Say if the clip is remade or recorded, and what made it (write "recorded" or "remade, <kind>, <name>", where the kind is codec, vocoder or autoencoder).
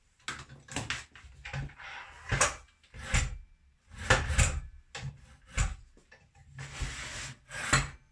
recorded